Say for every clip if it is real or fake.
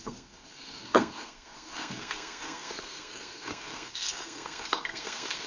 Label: fake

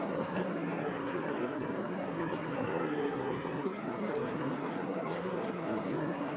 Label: fake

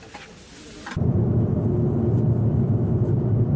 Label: real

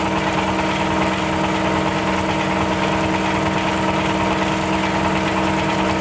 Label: real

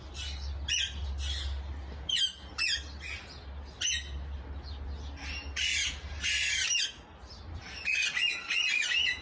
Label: real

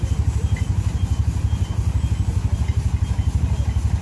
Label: real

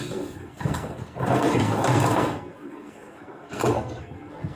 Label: fake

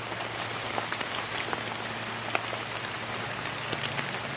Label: real